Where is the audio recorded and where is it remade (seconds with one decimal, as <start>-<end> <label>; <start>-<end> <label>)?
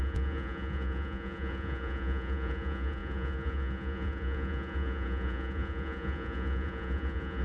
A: 0.0-7.4 remade